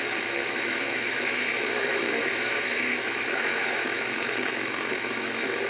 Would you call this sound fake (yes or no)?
yes